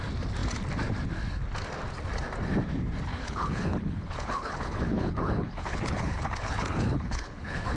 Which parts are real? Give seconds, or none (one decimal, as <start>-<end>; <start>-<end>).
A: 0.0-3.1